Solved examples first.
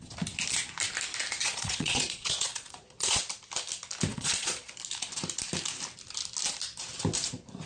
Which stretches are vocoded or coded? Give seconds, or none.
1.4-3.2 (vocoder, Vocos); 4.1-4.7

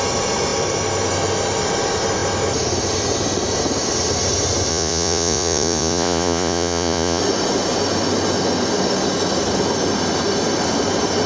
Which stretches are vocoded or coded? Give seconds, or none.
4.7-7.2 (vocoder, Vocos)

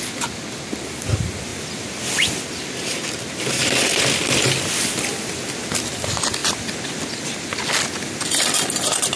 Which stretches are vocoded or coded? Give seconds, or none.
none

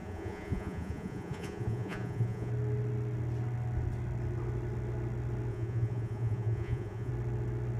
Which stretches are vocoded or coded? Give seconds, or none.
0.0-2.5 (vocoder, Vocos); 5.5-7.1